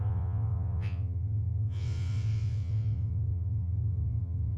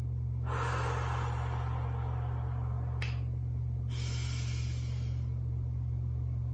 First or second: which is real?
second